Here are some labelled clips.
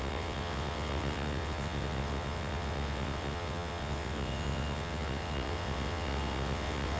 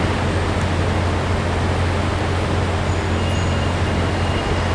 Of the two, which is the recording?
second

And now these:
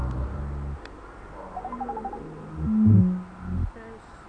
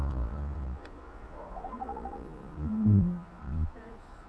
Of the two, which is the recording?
first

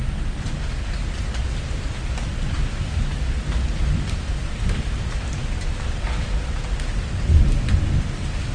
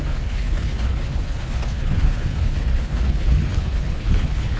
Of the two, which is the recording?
first